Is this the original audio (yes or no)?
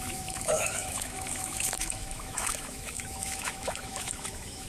no